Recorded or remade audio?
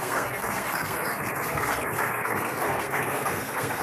remade